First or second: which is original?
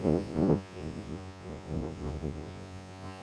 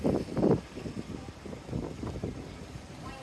second